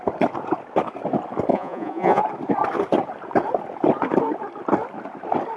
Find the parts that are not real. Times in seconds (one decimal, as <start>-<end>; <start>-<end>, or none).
1.5-2.2